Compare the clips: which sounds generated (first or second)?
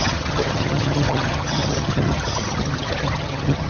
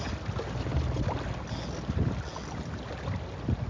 first